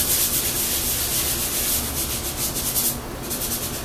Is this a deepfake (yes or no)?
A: no